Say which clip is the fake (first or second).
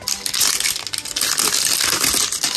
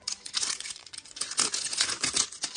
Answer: second